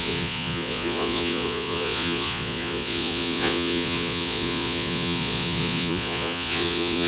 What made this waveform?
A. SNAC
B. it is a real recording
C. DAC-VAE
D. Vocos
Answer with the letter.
D